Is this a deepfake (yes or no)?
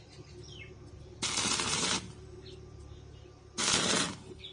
no